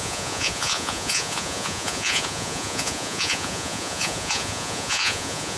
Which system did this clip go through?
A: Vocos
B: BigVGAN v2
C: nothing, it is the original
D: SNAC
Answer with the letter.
A